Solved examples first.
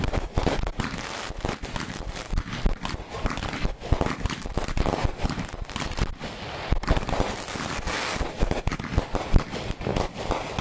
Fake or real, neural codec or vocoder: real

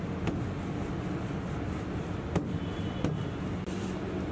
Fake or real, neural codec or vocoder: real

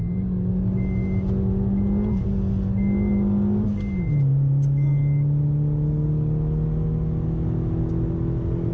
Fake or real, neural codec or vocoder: real